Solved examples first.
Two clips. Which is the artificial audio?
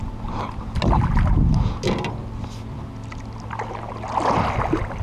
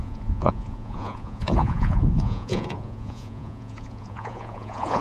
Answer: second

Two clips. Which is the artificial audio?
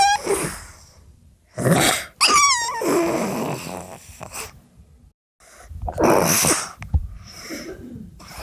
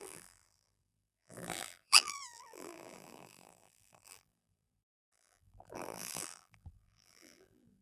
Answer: second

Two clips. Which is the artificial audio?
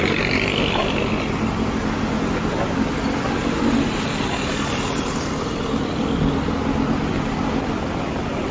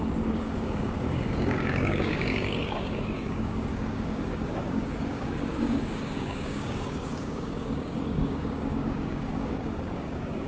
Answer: second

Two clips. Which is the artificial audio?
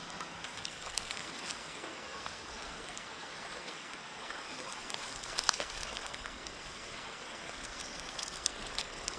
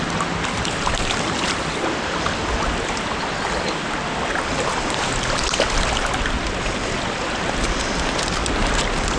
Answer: first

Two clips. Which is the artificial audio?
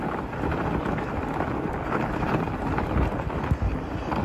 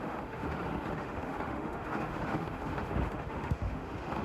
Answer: second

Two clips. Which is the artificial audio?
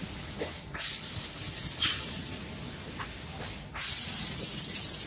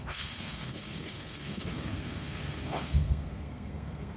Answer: second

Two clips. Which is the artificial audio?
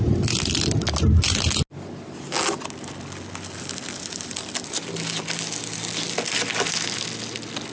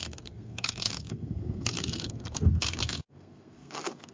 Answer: second